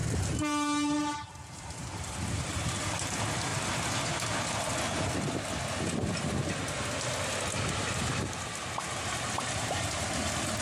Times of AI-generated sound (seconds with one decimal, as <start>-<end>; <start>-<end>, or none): 0.0-3.5; 7.7-10.6